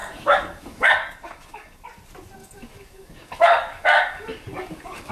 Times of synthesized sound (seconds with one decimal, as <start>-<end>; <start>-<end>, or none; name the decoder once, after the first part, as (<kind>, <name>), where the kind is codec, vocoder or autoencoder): 0.0-1.8 (codec, DAC); 2.4-5.1